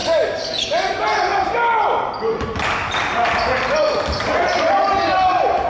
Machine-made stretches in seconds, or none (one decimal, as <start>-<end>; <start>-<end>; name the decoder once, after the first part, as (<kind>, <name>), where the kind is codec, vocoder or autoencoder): 0.9-1.3 (vocoder, BigVGAN v2); 4.7-5.7